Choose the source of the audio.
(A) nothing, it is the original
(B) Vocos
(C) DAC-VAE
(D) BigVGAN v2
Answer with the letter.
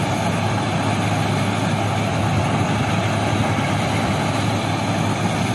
A